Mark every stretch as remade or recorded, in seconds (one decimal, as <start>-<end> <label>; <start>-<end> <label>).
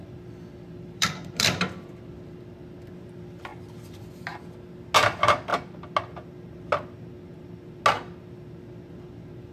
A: 0.0-1.9 remade; 1.9-9.5 recorded